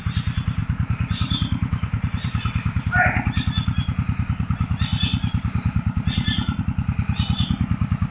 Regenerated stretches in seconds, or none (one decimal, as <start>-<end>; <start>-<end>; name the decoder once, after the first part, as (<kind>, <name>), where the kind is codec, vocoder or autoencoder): 0.6-2.9 (vocoder, BigVGAN v2); 4.9-6.6